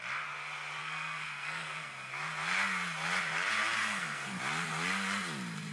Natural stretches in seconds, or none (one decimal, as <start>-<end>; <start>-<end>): 0.0-0.8; 2.1-3.8; 4.4-5.7